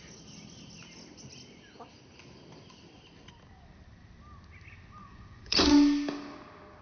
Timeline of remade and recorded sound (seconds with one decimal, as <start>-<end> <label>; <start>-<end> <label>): 0.0-5.0 recorded; 5.0-5.7 remade; 5.7-6.8 recorded